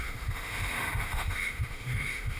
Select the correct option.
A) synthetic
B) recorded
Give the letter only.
A